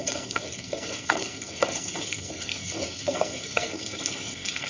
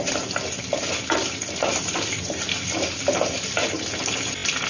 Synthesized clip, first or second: first